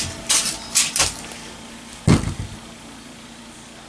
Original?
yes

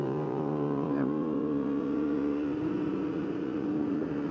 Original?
no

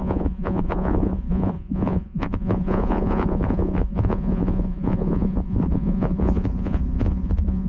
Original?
no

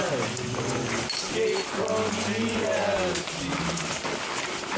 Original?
yes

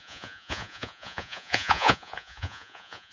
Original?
no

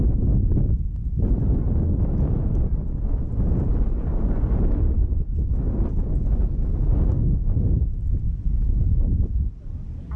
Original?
yes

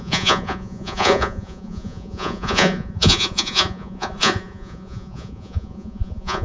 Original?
no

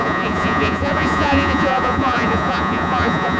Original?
no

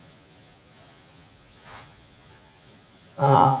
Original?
no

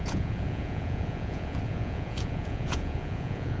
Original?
no